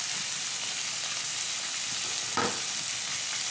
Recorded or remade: recorded